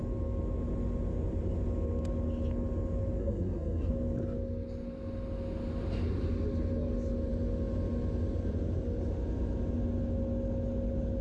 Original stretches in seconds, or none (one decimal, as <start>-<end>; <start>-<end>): 0.0-3.2; 3.9-11.2